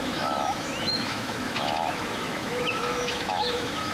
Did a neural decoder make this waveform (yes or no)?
yes